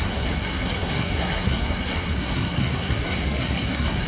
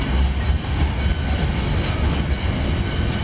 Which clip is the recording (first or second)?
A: second